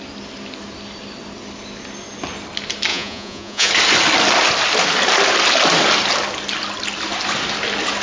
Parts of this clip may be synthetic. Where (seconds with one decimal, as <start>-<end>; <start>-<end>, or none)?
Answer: 2.9-3.7